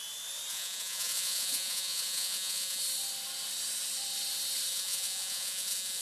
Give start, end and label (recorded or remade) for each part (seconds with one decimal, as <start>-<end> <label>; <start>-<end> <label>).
0.0-0.5 recorded; 0.5-2.8 remade; 2.8-4.7 recorded; 4.7-6.0 remade